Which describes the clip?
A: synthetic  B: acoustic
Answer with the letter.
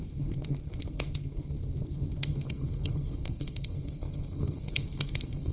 A